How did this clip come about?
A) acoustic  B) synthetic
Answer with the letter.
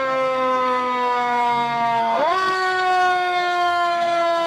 B